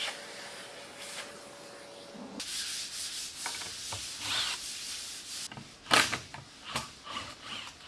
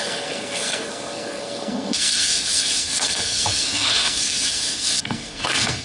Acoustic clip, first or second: first